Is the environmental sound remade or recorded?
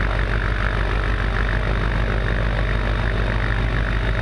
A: recorded